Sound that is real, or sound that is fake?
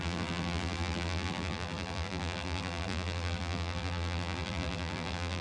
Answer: fake